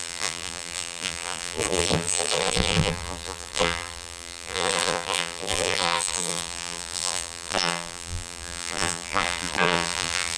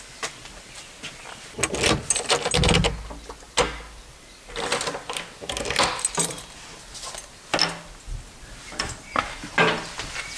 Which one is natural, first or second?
second